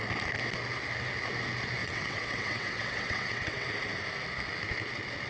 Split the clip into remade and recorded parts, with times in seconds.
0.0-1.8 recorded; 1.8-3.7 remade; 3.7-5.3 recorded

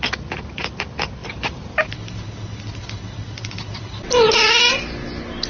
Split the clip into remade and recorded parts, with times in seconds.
0.0-1.2 recorded; 1.2-4.5 remade; 4.5-5.5 recorded

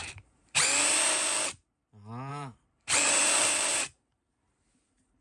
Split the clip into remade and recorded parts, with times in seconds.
0.0-1.3 remade; 1.3-2.3 recorded; 2.3-5.2 remade

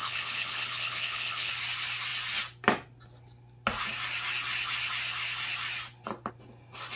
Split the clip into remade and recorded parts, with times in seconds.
0.0-1.5 remade; 1.5-7.0 recorded

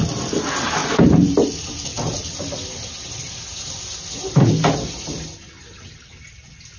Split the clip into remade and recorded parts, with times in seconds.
0.0-6.8 recorded

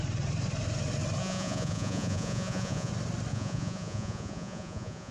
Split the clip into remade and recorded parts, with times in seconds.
0.0-1.2 recorded; 1.2-2.9 remade; 2.9-3.3 recorded; 3.3-5.1 remade

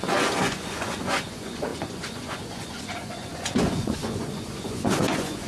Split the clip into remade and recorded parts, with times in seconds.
0.0-5.5 remade